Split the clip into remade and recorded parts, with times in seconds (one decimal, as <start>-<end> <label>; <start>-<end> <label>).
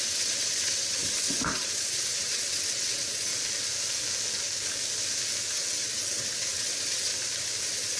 0.0-3.3 remade; 3.3-5.5 recorded; 5.5-7.1 remade; 7.1-7.6 recorded; 7.6-8.0 remade